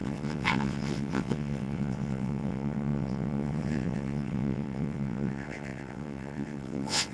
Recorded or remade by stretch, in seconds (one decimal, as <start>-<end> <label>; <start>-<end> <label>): 0.0-7.1 remade